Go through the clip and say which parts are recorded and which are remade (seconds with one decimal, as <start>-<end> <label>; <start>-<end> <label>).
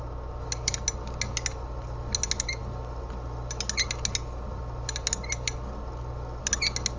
0.0-7.0 recorded